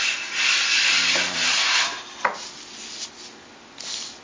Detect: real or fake real